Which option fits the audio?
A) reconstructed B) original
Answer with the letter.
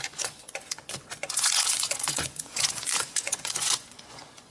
A